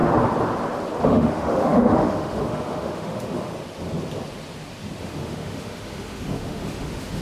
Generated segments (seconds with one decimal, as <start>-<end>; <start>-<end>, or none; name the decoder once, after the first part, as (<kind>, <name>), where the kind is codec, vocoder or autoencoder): 1.0-3.5 (autoencoder, DAC-VAE); 5.0-7.2